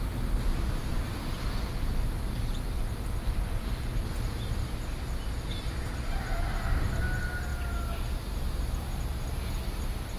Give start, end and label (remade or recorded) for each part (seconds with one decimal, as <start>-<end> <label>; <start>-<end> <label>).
0.0-10.2 recorded